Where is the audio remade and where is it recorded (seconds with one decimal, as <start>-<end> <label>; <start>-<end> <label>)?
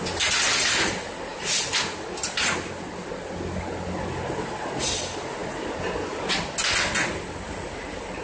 0.0-8.2 recorded